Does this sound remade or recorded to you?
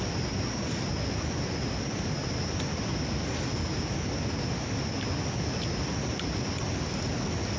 recorded